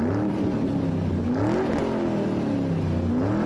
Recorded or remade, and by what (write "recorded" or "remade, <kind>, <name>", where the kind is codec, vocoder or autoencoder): recorded